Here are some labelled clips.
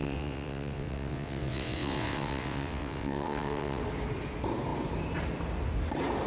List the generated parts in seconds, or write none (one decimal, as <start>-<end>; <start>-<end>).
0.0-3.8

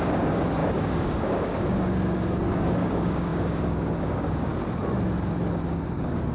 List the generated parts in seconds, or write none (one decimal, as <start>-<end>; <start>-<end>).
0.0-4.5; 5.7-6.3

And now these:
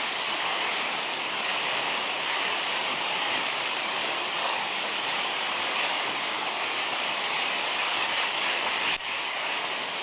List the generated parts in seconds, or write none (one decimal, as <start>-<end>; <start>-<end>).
0.0-1.5; 2.3-10.0